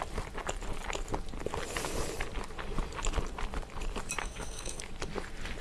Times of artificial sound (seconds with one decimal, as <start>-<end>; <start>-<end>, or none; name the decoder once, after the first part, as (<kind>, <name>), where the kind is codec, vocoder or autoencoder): 4.2-4.8 (codec, SNAC)